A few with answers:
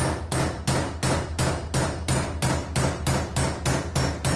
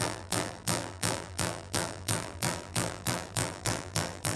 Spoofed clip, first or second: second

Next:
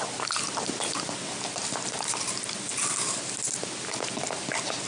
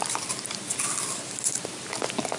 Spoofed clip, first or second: second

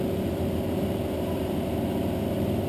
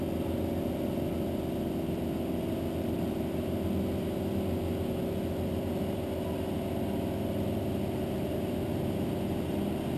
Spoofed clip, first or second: first